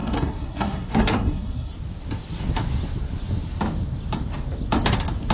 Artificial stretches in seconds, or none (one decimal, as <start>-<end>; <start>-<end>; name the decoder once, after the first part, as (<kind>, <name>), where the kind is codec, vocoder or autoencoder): 0.0-1.7 (codec, SNAC)